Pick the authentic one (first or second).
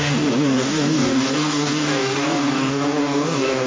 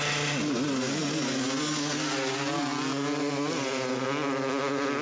second